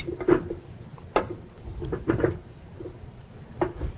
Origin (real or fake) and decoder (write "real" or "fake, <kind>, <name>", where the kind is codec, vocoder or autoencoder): real